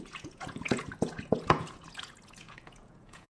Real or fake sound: fake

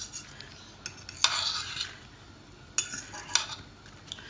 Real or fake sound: real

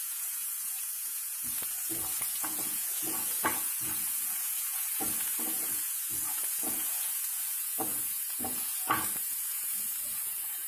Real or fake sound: fake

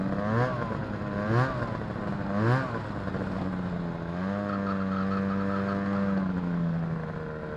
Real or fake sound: real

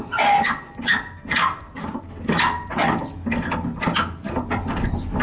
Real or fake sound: real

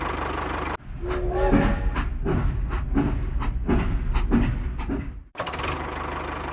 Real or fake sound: real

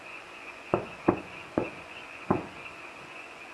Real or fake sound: fake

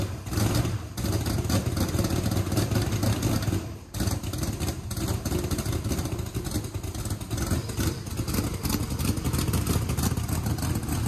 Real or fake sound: real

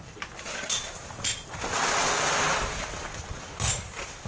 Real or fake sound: real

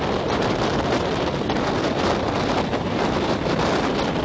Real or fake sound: fake